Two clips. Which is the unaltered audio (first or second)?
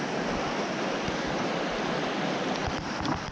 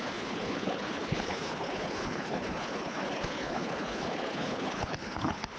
first